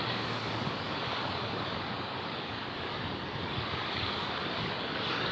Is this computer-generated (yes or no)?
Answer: yes